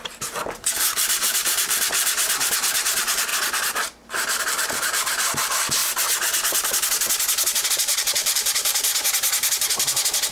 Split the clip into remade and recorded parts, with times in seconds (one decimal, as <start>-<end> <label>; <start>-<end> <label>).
0.0-3.3 remade; 3.3-4.4 recorded; 4.4-5.8 remade; 5.8-7.7 recorded; 7.7-8.9 remade; 8.9-10.3 recorded